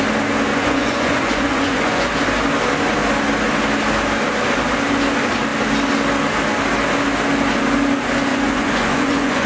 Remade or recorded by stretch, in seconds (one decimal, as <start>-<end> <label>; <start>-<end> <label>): 0.0-0.5 recorded; 0.5-2.2 remade; 2.2-8.3 recorded; 8.3-9.5 remade